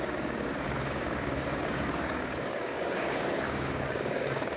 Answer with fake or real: fake